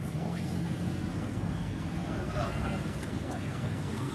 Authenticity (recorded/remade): remade